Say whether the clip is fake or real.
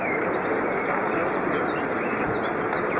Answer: real